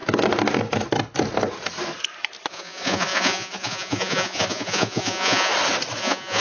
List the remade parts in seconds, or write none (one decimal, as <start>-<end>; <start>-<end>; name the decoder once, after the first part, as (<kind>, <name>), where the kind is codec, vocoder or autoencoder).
2.5-5.5 (vocoder, Vocos); 6.0-6.4